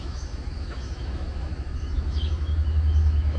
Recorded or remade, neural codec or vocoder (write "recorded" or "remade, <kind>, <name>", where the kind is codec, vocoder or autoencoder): remade, autoencoder, DAC-VAE